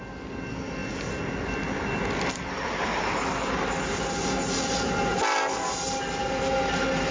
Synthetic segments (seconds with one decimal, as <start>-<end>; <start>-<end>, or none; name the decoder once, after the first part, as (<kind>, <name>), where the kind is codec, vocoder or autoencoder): none